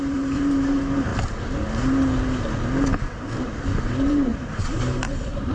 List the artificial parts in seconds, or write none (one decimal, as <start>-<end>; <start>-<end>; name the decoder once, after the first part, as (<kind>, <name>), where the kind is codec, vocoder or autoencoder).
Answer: 0.0-1.1 (vocoder, BigVGAN v2); 3.4-5.5